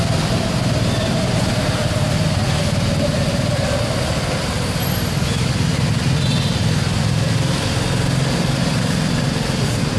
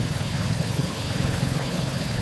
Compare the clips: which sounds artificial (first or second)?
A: second